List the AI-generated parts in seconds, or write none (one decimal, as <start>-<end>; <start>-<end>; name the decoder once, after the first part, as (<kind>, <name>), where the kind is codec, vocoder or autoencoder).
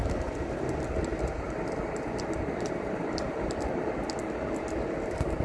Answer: 0.0-5.4 (vocoder, BigVGAN v2)